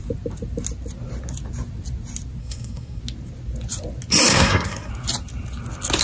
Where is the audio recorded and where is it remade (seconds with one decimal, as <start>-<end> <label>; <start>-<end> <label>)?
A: 0.0-2.4 recorded; 2.4-3.0 remade; 3.0-4.3 recorded; 4.3-4.9 remade; 4.9-6.0 recorded